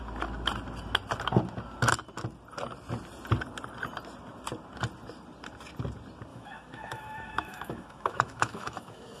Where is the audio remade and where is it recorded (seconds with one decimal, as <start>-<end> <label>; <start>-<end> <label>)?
0.0-6.3 recorded; 6.3-9.2 remade